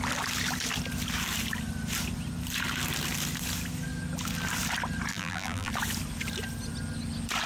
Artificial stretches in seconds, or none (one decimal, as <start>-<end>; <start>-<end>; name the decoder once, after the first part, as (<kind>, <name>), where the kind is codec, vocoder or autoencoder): 5.1-5.7 (vocoder, BigVGAN v2)